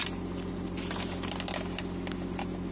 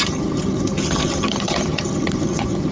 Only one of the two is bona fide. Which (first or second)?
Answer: first